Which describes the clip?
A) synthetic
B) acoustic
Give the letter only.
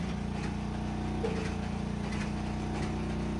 B